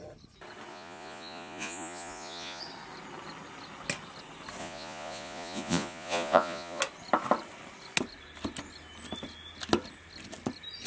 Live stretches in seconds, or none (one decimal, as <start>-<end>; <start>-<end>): 0.0-0.7; 2.6-4.6; 6.8-10.9